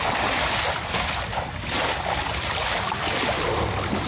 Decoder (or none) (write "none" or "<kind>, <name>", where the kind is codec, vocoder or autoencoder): none